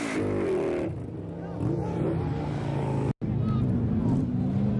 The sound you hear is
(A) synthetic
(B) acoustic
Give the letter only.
B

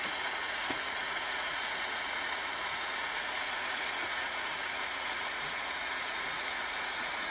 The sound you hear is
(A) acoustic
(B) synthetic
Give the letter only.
B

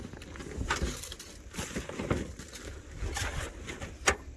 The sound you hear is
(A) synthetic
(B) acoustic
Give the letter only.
B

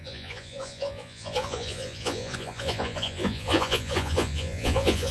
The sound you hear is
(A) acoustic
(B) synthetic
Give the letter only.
B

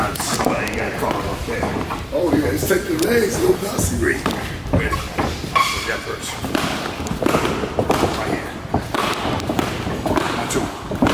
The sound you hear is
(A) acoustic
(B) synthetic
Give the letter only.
B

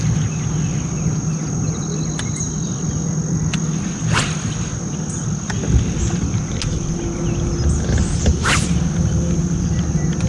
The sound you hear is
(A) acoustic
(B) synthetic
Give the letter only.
A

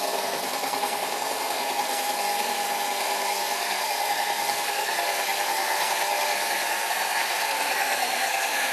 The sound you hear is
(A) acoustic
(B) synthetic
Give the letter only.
B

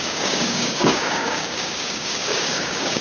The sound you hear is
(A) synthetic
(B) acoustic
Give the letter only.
A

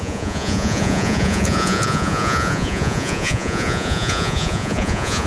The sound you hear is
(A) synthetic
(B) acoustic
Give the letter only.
A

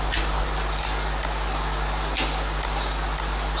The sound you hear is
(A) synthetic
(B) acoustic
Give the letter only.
B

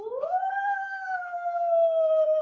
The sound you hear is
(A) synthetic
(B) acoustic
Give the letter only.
A